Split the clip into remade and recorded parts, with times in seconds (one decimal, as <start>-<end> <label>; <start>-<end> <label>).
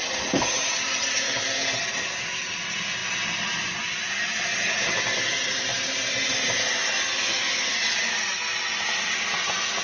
0.0-9.8 recorded